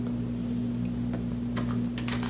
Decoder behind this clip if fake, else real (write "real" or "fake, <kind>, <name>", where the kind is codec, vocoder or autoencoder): real